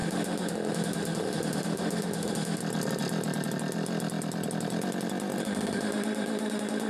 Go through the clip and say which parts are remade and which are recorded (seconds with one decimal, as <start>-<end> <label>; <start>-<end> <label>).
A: 0.0-2.6 remade; 2.6-5.4 recorded; 5.4-6.9 remade